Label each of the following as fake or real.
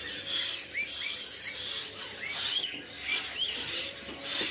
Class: real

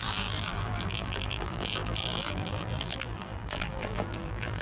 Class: fake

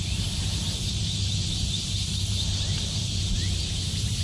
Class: fake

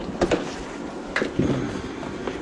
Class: real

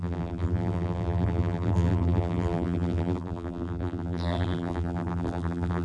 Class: fake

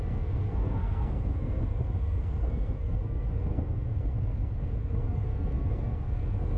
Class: fake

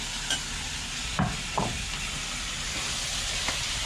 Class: real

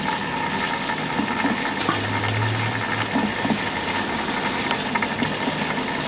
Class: real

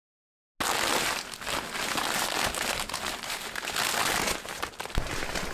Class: real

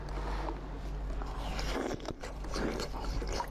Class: real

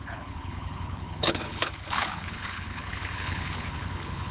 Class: fake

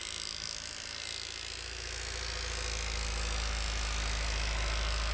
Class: real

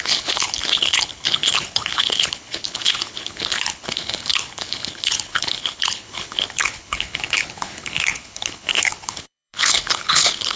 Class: fake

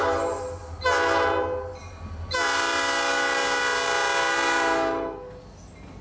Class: real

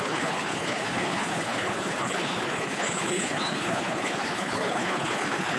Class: fake